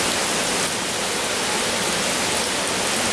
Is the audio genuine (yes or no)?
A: yes